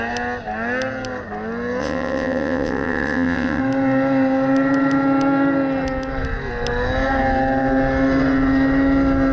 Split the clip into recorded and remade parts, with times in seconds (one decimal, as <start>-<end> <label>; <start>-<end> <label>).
0.0-1.8 recorded; 1.8-3.6 remade; 3.6-9.3 recorded